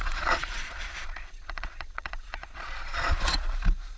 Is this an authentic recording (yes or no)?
no